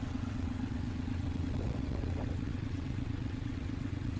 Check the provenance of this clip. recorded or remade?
remade